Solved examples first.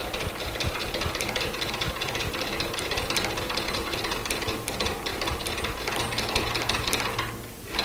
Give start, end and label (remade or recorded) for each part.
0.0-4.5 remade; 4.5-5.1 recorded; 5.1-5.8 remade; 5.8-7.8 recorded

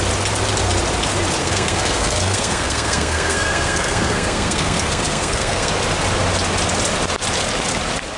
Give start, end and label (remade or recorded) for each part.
0.0-1.4 recorded; 1.4-5.7 remade; 5.7-8.2 recorded

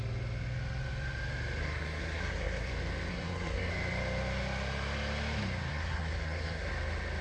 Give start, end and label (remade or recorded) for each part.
0.0-1.6 recorded; 1.6-2.7 remade; 2.7-3.1 recorded; 3.1-3.7 remade; 3.7-5.7 recorded; 5.7-6.7 remade; 6.7-7.2 recorded

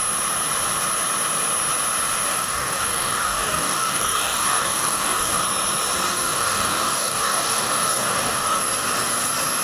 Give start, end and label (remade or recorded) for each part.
0.0-2.3 recorded; 2.3-5.4 remade; 5.4-6.1 recorded; 6.1-8.6 remade; 8.6-9.6 recorded

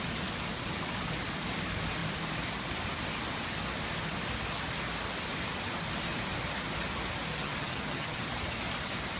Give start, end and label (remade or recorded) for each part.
0.0-7.3 recorded; 7.3-8.2 remade; 8.2-9.2 recorded

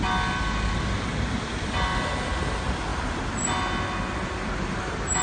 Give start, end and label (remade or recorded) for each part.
0.0-5.2 recorded